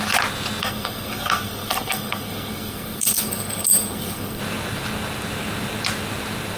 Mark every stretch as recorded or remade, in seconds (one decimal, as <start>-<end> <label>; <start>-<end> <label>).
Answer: 0.0-0.6 recorded; 0.6-4.4 remade; 4.4-6.6 recorded